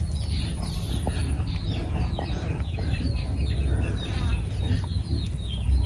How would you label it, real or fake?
real